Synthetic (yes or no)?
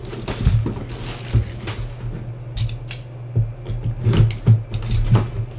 no